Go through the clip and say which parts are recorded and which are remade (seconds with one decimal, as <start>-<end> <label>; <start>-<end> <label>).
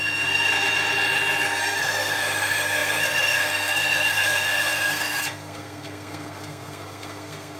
0.0-0.5 remade; 0.5-1.6 recorded; 1.6-7.6 remade